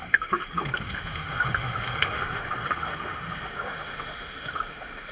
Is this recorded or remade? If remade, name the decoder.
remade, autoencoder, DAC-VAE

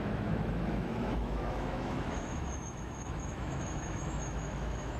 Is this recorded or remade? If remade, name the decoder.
remade, autoencoder, DAC-VAE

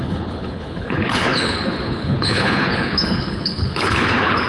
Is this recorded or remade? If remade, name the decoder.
remade, codec, HILCodec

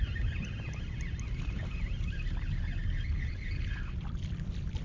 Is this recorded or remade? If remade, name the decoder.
recorded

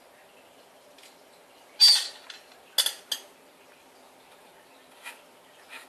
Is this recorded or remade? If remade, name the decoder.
recorded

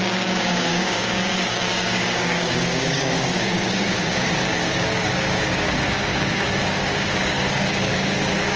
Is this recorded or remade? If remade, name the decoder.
remade, codec, DAC